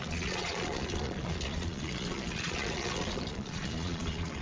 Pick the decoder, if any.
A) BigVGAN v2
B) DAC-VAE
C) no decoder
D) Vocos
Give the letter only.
D